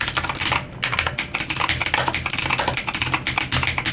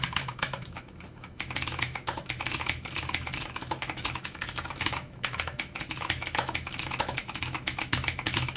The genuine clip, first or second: first